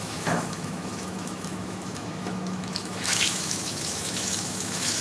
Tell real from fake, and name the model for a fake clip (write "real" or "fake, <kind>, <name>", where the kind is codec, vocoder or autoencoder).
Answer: fake, autoencoder, DAC-VAE